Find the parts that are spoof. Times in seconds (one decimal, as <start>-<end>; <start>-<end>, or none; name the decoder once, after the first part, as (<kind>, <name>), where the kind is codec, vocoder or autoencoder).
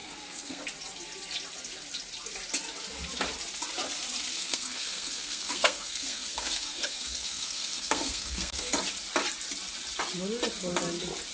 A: 0.0-0.6 (codec, SNAC); 4.3-8.7